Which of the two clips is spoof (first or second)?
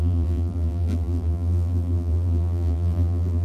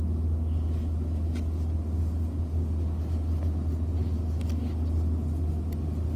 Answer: first